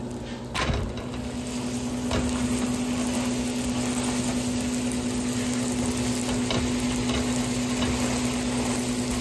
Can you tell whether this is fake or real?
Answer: real